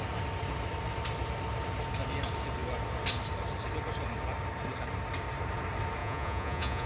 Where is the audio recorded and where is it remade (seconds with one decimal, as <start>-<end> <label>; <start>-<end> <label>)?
0.0-6.0 recorded; 6.0-6.9 remade